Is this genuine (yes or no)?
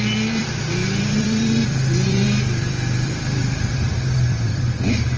no